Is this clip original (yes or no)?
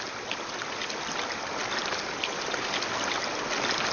yes